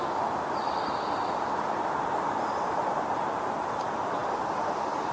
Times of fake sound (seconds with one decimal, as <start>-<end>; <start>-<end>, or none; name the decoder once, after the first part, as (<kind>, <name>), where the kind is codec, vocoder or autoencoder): none